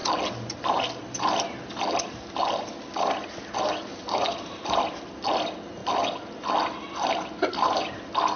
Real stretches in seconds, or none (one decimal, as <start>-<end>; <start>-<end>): 0.0-8.4